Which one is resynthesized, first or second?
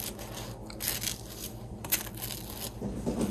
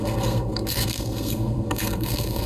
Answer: second